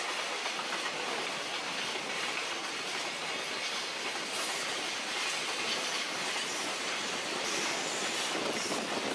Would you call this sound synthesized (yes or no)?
yes